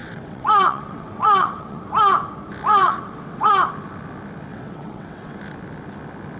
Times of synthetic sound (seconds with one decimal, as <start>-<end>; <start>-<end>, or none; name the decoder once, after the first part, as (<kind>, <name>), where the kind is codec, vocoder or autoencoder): 0.0-1.8 (vocoder, WaveNeXt); 2.7-3.5; 4.5-5.4

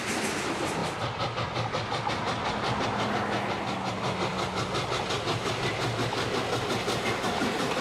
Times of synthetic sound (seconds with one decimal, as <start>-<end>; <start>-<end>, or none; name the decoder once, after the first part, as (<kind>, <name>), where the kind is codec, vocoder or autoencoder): none